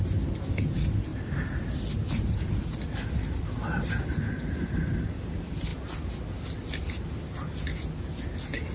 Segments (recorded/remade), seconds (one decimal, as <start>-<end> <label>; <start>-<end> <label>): 0.0-8.7 recorded